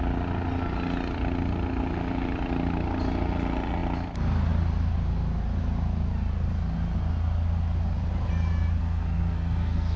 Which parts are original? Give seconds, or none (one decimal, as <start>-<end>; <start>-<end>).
0.0-8.8